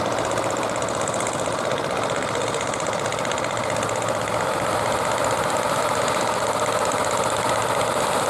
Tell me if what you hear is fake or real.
fake